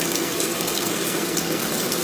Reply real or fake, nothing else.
fake